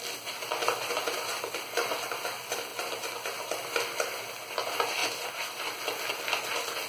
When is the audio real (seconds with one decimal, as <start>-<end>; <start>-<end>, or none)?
0.0-0.6; 1.4-5.0; 5.8-6.9